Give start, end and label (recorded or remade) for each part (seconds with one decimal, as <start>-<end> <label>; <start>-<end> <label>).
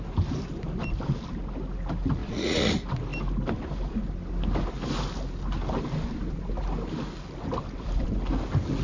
0.0-2.2 recorded; 2.2-2.7 remade; 2.7-8.8 recorded